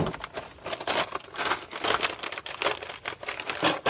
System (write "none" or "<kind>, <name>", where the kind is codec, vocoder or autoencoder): none